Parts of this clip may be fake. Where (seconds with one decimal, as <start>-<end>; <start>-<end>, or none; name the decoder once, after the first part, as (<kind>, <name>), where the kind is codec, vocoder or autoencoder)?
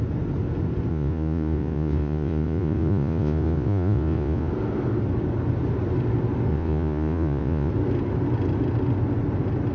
0.9-4.5 (vocoder, Vocos); 6.5-7.7